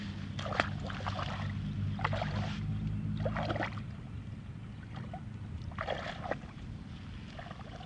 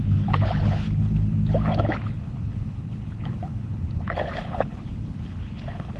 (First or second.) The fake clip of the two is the second